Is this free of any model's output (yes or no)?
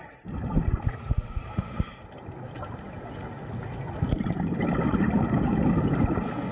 yes